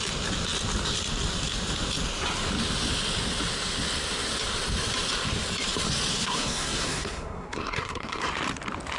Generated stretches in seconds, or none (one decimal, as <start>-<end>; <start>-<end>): 6.1-8.3